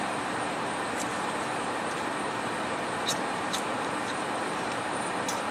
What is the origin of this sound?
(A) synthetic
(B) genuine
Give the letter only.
A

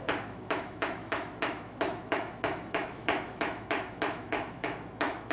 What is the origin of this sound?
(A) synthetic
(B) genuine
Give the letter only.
A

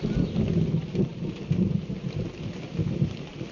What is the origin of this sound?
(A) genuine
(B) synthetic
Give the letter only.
A